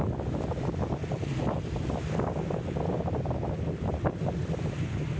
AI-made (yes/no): no